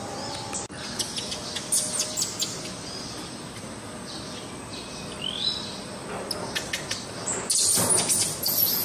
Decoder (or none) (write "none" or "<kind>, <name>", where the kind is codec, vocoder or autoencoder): none